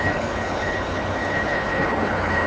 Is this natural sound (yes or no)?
no